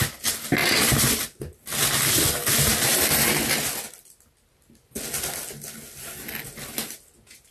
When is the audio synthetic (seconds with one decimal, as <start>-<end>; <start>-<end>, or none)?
none